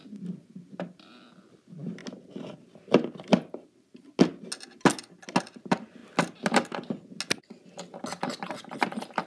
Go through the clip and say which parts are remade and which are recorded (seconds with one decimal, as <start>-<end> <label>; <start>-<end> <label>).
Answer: 0.0-9.3 recorded